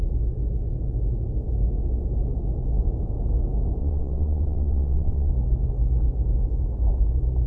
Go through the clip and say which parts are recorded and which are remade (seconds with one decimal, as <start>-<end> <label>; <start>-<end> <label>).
0.0-3.8 recorded; 3.8-5.3 remade; 5.3-7.5 recorded